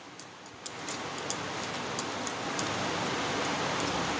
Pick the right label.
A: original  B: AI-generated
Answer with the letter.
A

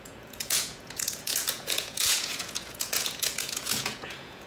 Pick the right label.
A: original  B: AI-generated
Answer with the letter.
B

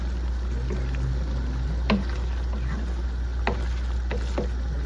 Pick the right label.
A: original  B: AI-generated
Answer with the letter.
A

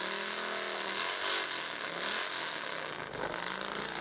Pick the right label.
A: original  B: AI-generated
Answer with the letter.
A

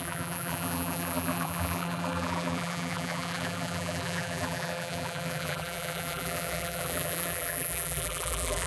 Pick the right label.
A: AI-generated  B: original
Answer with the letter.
A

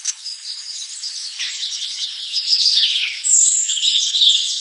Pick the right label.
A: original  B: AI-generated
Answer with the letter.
B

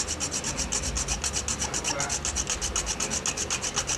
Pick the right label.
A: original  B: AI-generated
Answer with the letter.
A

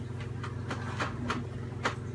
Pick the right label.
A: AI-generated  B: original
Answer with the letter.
B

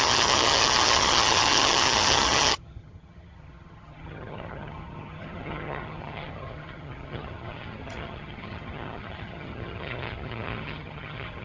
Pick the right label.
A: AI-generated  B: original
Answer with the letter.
A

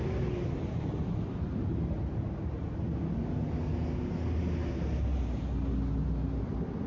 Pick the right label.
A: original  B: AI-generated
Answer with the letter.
A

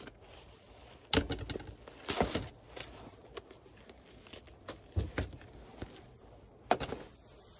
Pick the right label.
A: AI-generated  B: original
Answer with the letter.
B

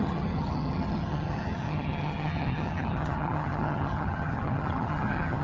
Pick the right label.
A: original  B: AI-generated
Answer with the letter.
B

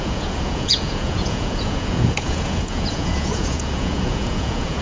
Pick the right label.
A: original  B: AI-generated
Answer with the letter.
B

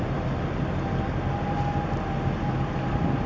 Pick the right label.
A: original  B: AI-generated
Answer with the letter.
A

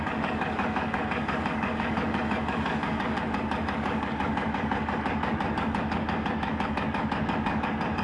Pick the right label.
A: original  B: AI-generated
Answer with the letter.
B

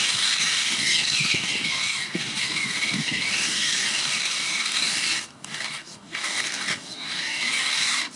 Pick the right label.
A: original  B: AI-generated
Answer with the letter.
B